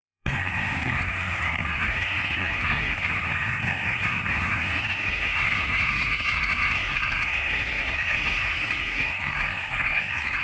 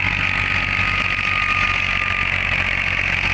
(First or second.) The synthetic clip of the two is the first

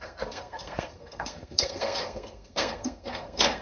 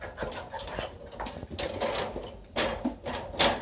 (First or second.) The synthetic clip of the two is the first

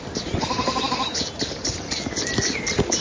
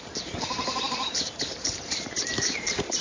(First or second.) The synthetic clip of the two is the second